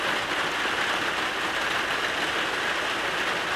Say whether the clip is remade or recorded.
recorded